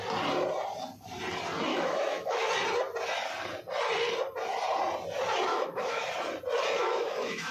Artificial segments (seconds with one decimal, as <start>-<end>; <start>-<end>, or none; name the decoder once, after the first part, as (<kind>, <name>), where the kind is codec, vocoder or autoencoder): 1.7-2.5 (autoencoder, DAC-VAE); 5.5-6.1; 6.8-7.5